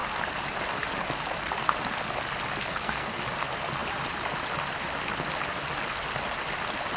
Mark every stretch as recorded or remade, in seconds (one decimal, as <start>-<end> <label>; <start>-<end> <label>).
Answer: 0.0-2.6 recorded; 2.6-3.2 remade; 3.2-7.0 recorded